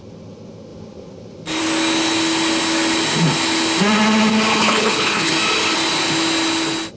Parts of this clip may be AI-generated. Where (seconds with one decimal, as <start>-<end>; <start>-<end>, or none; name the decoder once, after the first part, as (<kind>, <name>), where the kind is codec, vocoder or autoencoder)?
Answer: 4.5-5.3 (codec, HILCodec)